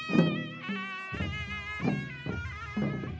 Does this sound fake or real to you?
real